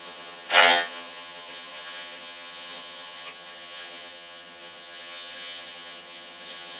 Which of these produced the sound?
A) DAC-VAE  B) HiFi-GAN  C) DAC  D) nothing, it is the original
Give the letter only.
B